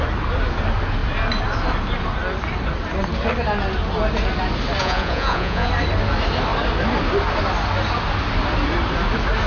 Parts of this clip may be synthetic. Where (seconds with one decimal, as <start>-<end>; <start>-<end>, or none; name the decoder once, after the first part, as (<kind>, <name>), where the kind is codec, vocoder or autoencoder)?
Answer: 4.8-5.7 (vocoder, Vocos)

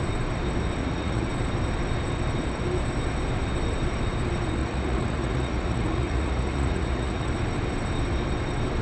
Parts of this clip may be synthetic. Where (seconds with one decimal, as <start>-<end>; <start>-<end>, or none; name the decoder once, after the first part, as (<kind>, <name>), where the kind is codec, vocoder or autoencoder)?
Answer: 0.8-1.3 (vocoder, Vocos); 4.6-7.3

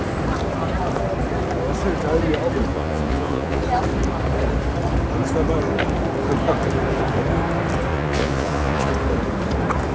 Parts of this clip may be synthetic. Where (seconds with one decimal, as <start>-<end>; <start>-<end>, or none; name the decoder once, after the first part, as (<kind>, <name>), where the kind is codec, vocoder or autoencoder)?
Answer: 2.7-3.6 (vocoder, Vocos); 7.9-8.9

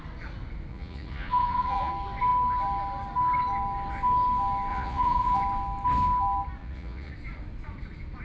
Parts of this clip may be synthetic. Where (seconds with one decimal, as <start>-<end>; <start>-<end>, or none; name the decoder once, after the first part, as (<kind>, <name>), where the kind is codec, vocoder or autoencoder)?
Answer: 0.7-1.9 (vocoder, Vocos); 4.7-5.4; 6.6-7.1

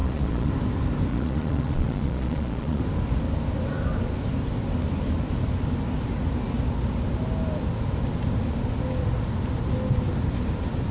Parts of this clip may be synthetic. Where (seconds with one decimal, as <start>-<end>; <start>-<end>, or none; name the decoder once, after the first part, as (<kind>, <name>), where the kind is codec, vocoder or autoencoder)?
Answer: 0.0-0.5 (vocoder, Vocos); 1.1-2.8